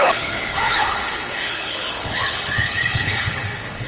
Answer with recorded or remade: remade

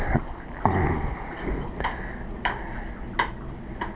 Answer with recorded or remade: recorded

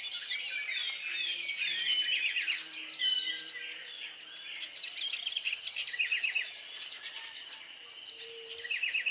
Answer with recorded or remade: recorded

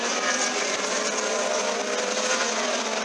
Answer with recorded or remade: recorded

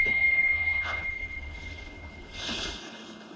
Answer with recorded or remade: remade